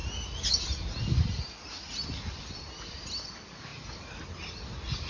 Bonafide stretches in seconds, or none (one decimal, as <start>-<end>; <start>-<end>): 0.0-5.1